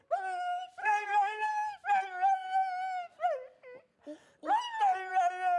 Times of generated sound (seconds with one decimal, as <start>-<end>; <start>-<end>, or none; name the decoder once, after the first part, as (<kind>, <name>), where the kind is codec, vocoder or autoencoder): 0.8-1.5 (codec, SNAC)